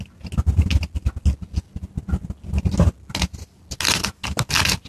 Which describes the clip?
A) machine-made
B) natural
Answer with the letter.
B